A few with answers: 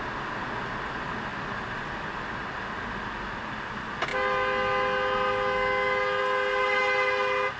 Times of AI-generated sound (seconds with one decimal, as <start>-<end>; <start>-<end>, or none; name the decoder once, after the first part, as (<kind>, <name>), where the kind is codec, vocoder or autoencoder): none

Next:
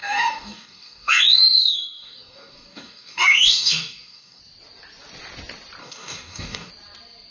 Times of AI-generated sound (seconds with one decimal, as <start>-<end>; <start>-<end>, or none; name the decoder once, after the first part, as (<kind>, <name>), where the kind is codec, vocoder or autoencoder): 0.0-4.4 (codec, DAC); 5.8-6.7

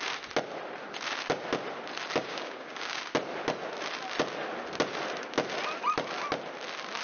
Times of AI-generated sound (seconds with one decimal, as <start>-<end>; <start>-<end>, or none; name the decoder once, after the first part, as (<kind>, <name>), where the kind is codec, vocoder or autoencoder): 2.2-3.0 (codec, DAC)

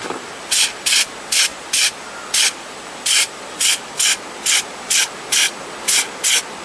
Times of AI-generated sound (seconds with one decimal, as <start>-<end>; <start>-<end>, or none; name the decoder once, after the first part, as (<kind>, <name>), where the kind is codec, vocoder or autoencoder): none

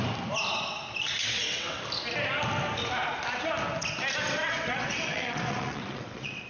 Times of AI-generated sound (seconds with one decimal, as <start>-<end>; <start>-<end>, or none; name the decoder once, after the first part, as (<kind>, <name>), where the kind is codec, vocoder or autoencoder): 1.2-1.8 (vocoder, WaveNeXt); 4.4-6.5

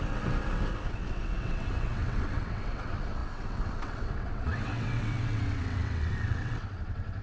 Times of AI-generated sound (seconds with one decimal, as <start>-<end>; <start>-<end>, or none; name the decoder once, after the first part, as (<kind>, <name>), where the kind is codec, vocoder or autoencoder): 0.0-7.2 (vocoder, WaveNeXt)

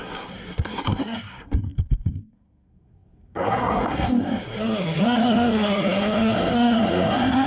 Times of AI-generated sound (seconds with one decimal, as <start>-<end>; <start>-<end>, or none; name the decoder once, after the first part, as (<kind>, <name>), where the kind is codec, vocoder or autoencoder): 0.0-7.5 (codec, SNAC)

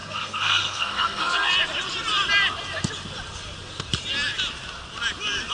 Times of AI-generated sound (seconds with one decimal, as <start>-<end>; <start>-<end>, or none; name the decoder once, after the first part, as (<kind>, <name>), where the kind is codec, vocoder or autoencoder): 0.0-1.5 (codec, SNAC)